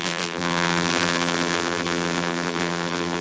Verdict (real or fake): fake